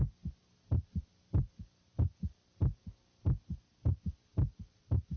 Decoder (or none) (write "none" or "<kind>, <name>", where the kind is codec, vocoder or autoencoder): none